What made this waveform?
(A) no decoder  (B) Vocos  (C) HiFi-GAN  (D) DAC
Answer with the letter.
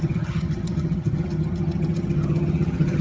C